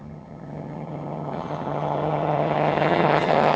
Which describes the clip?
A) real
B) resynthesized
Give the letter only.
B